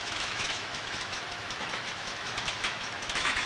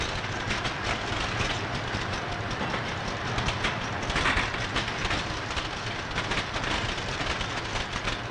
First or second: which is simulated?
first